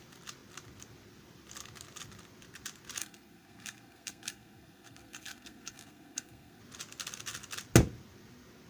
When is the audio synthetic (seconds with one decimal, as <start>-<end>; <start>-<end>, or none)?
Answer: 3.0-6.6